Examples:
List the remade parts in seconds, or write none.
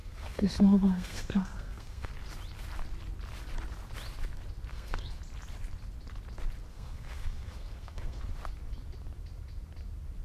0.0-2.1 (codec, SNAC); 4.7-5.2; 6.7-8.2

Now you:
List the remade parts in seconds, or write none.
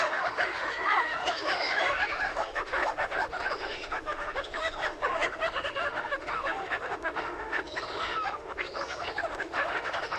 0.0-10.2 (autoencoder, DAC-VAE)